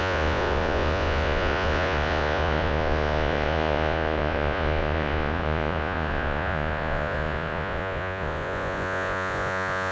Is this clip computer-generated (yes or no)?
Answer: yes